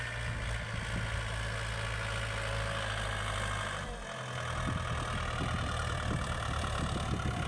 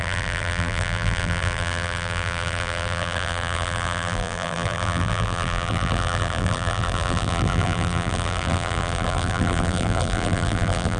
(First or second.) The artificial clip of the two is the second